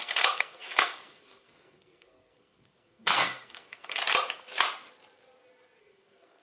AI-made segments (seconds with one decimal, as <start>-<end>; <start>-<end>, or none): 0.0-4.0; 5.8-6.4